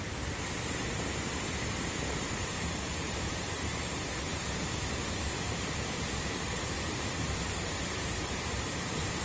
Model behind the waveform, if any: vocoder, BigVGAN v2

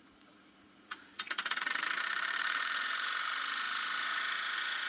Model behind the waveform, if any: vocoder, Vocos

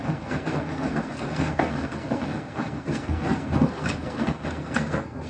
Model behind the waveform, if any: codec, SNAC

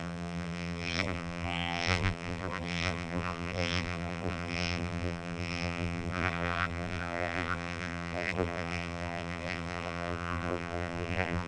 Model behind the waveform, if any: vocoder, BigVGAN v2